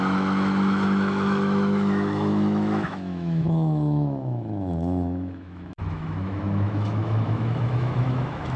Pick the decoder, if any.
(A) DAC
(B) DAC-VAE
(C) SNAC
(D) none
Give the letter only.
B